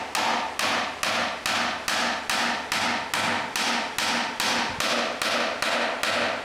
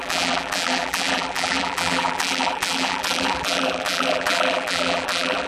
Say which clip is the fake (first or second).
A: second